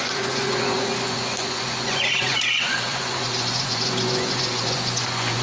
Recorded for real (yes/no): no